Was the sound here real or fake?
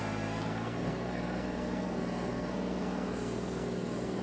fake